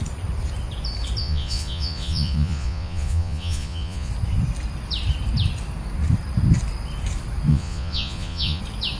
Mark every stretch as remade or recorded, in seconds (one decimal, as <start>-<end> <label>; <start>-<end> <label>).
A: 0.0-1.2 recorded; 1.2-4.1 remade; 4.1-7.5 recorded; 7.5-8.6 remade; 8.6-9.0 recorded